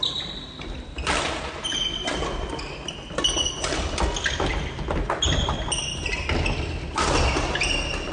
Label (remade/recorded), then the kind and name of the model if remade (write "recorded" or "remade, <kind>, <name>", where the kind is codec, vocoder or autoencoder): recorded